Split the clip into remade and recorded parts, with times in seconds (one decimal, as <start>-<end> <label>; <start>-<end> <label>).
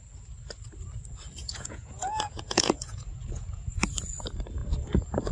0.0-1.4 recorded; 1.4-3.8 remade; 3.8-5.3 recorded